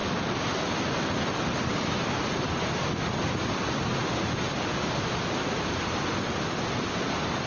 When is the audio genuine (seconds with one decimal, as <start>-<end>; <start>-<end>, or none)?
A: 0.0-7.5